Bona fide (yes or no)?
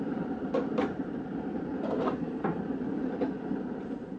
no